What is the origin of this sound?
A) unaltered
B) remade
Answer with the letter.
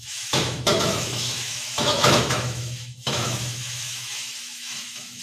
B